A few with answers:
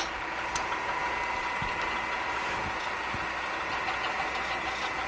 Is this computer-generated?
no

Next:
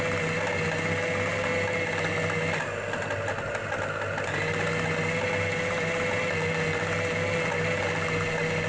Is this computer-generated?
no